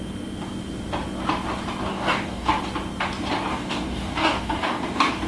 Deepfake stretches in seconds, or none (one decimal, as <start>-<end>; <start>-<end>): 1.9-2.5; 3.5-5.3